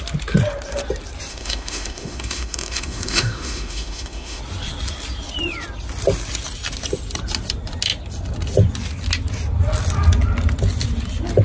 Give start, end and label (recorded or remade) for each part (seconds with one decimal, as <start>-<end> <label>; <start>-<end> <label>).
0.0-1.3 recorded; 1.3-4.4 remade; 4.4-11.4 recorded